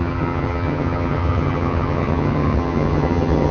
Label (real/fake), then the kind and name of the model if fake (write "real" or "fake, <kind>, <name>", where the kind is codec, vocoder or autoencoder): fake, vocoder, HiFi-GAN